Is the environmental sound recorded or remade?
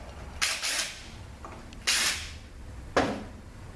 recorded